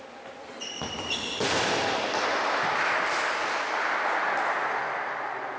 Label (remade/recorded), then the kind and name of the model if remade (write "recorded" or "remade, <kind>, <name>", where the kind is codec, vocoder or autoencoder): recorded